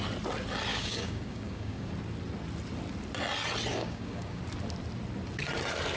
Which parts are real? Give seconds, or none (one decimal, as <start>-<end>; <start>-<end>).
0.0-0.7; 1.9-3.7; 4.4-6.0